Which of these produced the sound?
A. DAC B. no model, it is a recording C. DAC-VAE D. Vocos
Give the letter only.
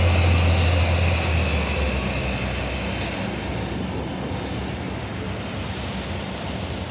B